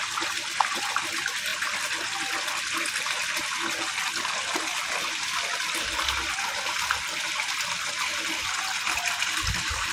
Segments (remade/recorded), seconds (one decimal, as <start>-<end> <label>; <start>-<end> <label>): 0.0-9.9 recorded